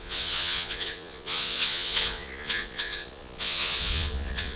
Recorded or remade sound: remade